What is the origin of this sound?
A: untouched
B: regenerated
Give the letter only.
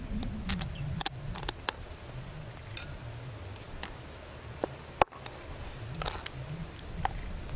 A